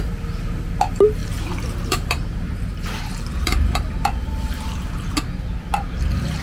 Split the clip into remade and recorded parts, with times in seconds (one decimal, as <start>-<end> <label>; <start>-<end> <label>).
0.0-1.2 recorded; 1.2-4.9 remade; 4.9-6.4 recorded